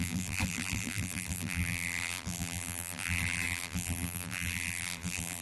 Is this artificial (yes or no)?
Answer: yes